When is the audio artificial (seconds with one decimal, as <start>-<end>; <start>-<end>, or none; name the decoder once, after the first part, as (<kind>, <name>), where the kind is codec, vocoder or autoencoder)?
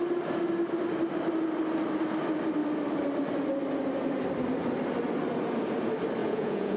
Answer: 6.2-6.8 (vocoder, Vocos)